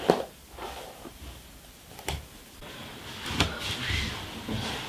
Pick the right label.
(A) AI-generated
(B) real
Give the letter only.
B